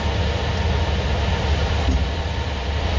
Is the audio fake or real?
real